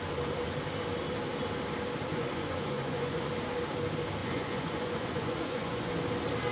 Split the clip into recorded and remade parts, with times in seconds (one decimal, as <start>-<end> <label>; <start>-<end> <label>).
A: 0.0-2.1 recorded; 2.1-3.3 remade; 3.3-4.2 recorded; 4.2-5.9 remade; 5.9-6.5 recorded